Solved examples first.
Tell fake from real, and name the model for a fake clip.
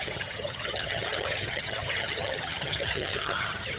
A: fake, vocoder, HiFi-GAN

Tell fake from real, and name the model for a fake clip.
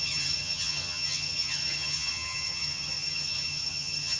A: fake, vocoder, HiFi-GAN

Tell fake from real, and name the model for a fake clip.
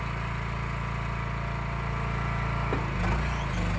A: real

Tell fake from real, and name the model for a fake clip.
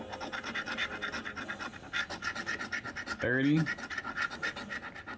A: real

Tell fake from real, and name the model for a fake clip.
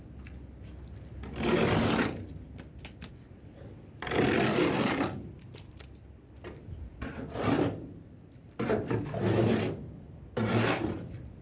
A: real